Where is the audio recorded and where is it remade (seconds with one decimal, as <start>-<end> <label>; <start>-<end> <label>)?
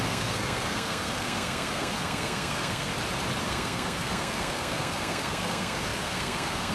0.0-2.9 remade; 2.9-3.4 recorded; 3.4-6.7 remade